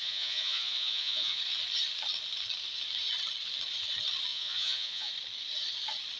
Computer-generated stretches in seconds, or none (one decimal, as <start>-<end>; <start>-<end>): 0.0-1.4; 4.3-5.1